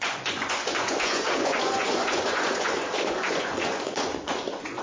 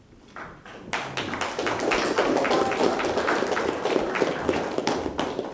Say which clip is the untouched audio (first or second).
second